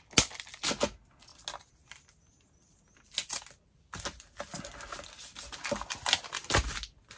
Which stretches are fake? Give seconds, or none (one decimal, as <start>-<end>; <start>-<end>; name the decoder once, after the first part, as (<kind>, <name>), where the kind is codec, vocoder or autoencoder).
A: none